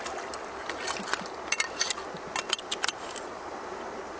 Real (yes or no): yes